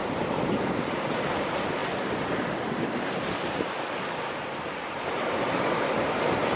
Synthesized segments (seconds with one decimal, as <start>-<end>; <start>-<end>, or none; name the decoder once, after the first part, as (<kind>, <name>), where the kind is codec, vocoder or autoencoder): 0.0-0.9 (vocoder, BigVGAN v2)